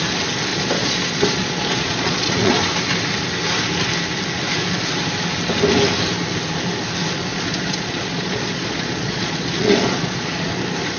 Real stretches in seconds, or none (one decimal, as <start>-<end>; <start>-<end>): 0.0-0.5; 2.6-7.3; 10.5-11.0